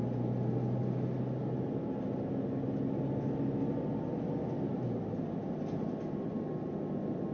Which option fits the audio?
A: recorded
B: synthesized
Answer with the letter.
A